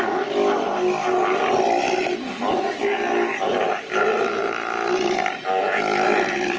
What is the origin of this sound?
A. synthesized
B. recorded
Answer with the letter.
B